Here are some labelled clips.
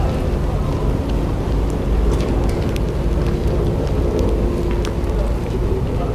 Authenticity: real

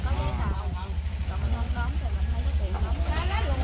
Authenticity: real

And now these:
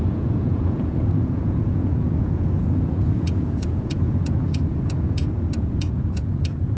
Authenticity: fake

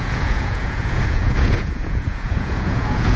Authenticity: fake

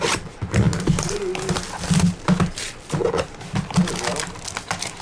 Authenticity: real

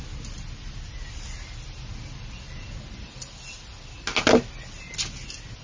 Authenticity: real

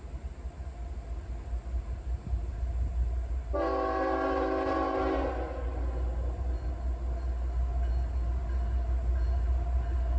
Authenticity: real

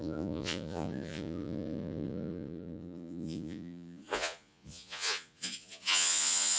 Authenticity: fake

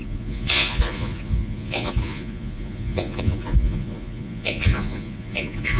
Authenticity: fake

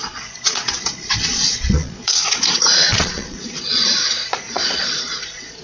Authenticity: fake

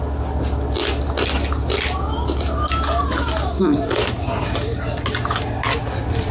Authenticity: real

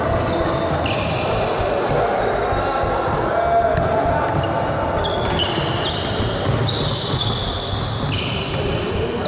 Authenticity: real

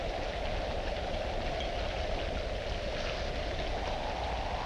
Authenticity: real